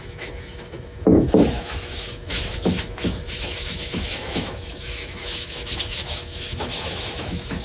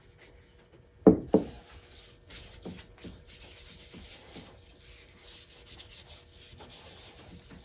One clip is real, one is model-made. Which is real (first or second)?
second